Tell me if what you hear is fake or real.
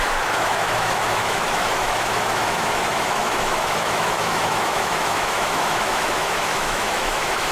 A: fake